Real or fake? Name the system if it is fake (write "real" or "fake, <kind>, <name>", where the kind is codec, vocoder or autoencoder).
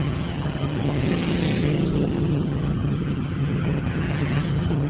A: fake, vocoder, HiFi-GAN